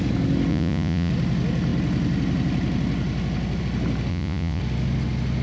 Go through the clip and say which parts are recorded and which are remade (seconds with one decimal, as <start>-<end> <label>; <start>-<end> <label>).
0.0-0.5 recorded; 0.5-1.1 remade; 1.1-4.1 recorded; 4.1-4.6 remade; 4.6-5.4 recorded